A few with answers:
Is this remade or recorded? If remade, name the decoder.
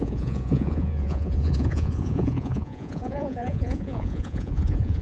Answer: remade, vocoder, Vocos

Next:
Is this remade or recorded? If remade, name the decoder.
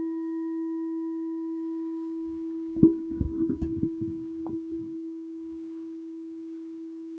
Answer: remade, codec, DAC